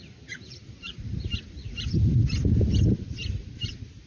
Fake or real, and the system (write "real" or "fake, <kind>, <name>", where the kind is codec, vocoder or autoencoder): real